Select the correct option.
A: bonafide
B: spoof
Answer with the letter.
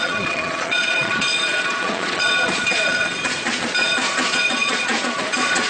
B